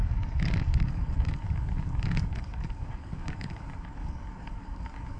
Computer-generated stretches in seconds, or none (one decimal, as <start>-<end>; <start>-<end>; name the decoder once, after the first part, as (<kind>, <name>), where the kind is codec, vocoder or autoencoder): 0.0-5.2 (codec, DAC)